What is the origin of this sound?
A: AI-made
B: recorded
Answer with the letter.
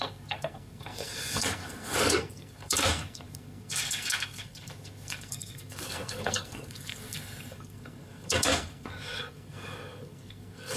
A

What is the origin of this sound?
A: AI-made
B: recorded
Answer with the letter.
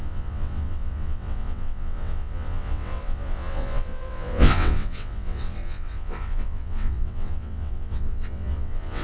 A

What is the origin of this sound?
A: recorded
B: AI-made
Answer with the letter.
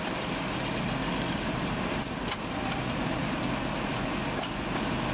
A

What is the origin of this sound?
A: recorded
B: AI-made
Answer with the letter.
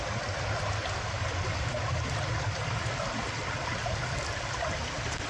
A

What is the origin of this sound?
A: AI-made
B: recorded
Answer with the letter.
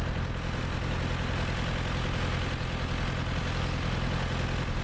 B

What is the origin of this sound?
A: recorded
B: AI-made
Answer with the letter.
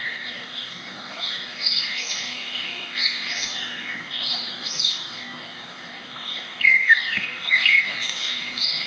B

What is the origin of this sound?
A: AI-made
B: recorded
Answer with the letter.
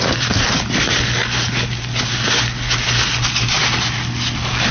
B